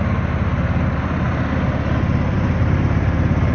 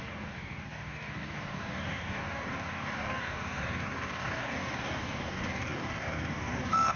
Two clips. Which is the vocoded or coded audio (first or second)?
second